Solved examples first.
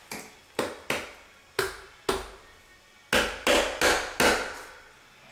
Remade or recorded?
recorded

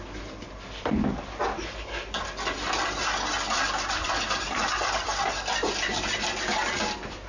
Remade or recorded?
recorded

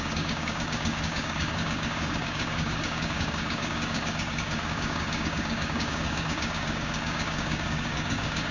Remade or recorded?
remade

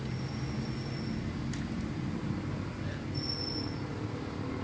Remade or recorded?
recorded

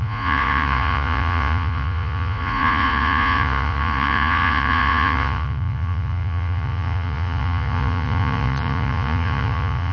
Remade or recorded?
remade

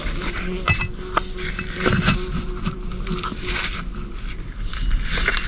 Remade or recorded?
recorded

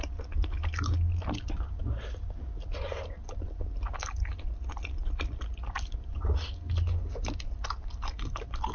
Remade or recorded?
recorded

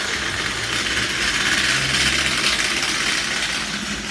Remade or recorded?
recorded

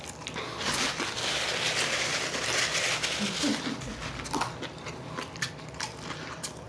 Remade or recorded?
recorded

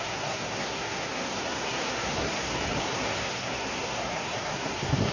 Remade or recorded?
remade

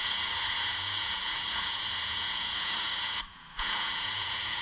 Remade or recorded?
remade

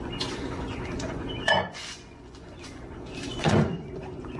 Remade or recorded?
remade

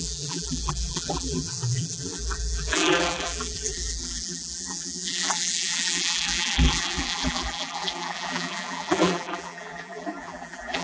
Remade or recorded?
remade